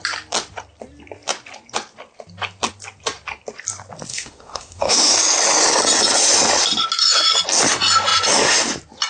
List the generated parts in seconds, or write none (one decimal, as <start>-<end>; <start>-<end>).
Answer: 4.1-5.1